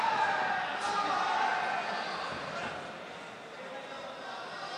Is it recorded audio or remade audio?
recorded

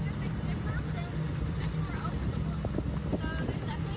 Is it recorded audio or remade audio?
recorded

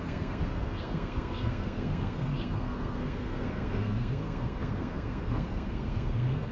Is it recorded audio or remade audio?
remade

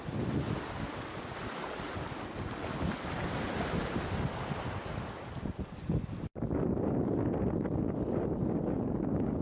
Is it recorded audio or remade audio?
recorded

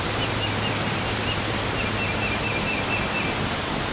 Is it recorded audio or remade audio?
recorded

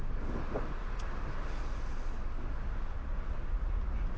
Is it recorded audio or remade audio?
recorded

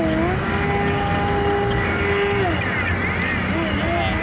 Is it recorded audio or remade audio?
recorded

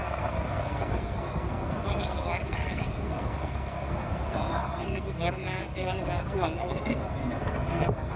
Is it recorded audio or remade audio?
remade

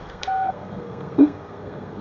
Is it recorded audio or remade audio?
remade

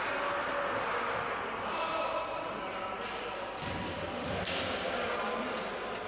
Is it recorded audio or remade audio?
recorded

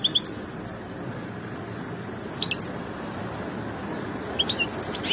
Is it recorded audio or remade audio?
recorded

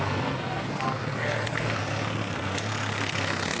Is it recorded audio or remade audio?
remade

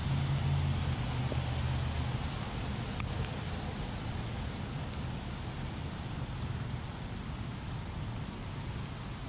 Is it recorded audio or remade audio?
recorded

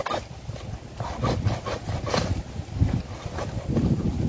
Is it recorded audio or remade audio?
recorded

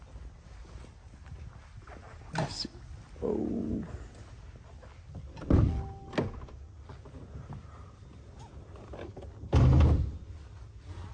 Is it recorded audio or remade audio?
recorded